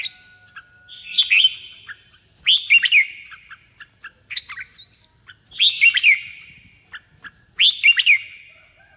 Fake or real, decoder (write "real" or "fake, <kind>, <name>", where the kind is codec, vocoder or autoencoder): real